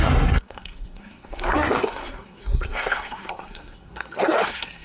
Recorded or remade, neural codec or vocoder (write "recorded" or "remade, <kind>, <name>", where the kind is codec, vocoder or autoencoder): remade, codec, SNAC